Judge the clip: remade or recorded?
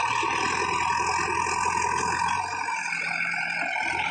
recorded